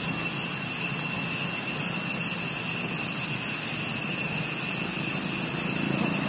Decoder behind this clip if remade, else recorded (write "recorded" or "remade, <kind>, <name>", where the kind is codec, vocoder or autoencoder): recorded